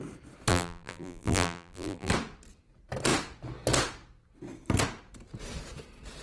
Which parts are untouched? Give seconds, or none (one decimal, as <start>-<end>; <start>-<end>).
0.0-0.5; 2.1-6.2